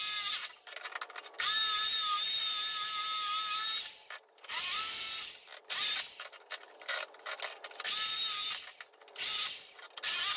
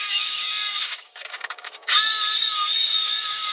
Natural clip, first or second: first